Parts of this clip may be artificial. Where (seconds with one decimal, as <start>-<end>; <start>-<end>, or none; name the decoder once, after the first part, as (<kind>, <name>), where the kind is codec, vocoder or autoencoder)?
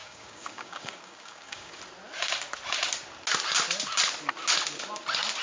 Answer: 0.0-1.8 (codec, DAC)